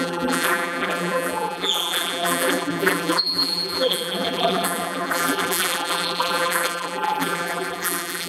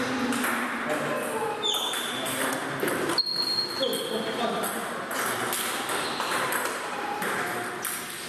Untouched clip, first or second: second